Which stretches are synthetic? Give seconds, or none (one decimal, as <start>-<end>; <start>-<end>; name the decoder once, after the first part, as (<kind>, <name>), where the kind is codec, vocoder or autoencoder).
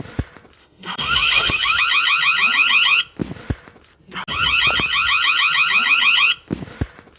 0.6-1.8 (autoencoder, DAC-VAE)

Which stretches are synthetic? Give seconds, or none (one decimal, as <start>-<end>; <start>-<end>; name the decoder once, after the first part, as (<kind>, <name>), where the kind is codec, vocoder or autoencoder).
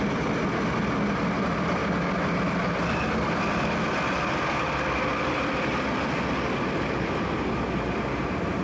none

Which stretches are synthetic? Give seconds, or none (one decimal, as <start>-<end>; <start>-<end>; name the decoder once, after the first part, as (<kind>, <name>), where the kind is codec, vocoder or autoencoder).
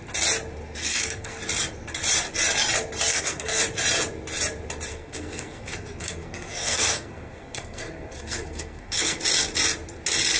0.8-1.4 (codec, SNAC); 3.1-3.6; 4.9-9.2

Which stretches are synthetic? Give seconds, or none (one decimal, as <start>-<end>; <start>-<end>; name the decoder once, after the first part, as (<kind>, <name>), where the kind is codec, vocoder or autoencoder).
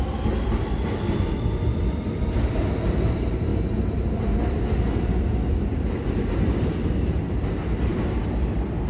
none